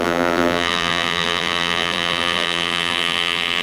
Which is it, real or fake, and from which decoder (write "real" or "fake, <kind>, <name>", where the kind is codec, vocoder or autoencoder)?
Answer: fake, vocoder, BigVGAN v2